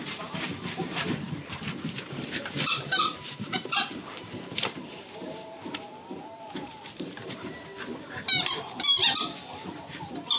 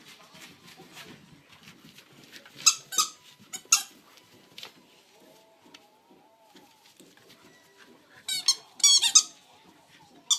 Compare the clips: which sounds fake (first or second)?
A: first